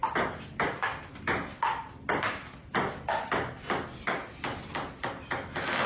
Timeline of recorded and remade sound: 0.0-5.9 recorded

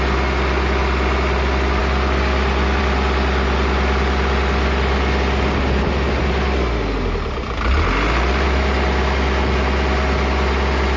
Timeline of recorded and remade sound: 0.0-11.0 recorded